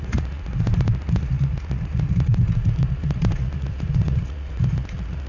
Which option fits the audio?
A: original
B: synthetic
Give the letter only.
B